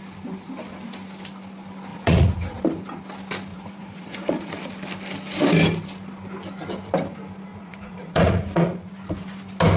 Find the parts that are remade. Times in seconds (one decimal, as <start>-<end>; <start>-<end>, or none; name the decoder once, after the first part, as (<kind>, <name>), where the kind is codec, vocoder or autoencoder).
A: 1.9-2.6 (vocoder, Vocos); 3.5-4.6; 7.5-8.9